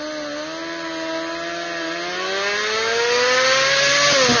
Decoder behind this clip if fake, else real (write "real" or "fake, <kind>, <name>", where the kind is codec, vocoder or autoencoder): real